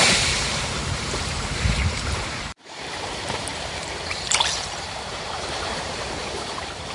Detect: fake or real fake